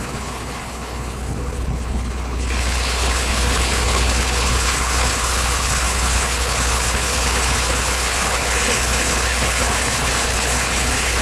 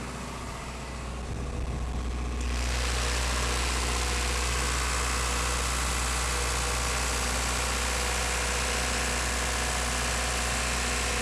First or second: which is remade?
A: first